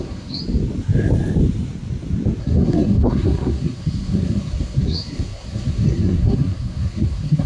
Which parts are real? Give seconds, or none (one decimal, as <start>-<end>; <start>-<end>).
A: 0.4-2.4